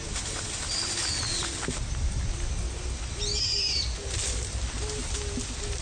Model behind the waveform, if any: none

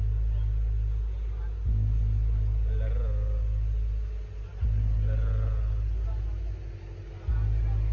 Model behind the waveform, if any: none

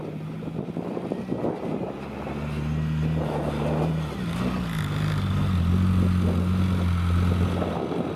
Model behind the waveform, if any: none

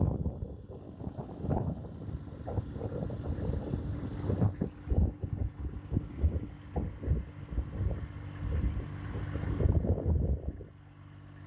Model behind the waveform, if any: none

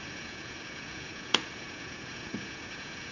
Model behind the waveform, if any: vocoder, Vocos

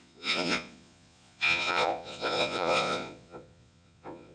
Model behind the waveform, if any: vocoder, Vocos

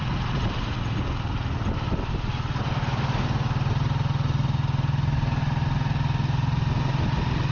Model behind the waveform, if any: none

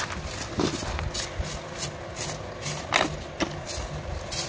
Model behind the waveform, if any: none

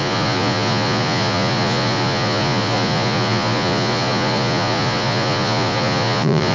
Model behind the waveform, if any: vocoder, Vocos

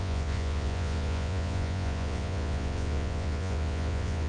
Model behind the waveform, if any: vocoder, Vocos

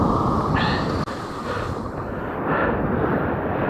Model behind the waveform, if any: none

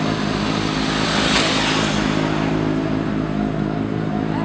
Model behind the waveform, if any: none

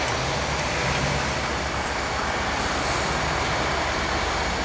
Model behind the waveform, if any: none